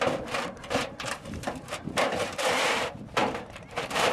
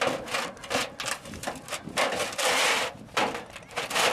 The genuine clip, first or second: second